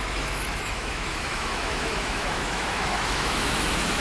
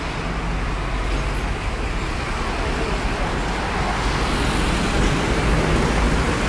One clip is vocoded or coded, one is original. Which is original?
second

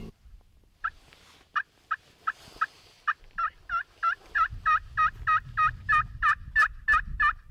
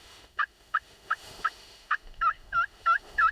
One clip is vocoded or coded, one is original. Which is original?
first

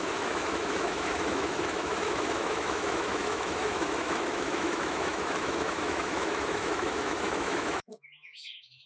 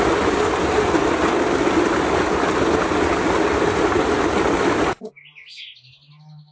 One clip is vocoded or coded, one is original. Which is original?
second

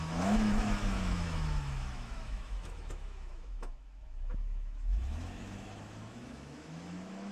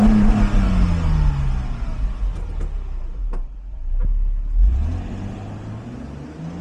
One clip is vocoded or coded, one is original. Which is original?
second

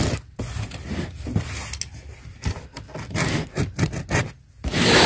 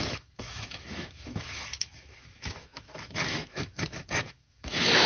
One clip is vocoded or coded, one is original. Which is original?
first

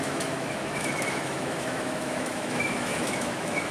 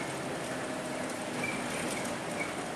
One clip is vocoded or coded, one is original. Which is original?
second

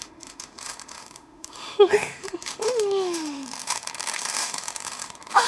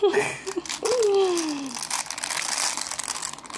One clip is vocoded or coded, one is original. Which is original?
second